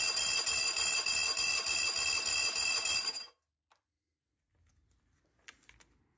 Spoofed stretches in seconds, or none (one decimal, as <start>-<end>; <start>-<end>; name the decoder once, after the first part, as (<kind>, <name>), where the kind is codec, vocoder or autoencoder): none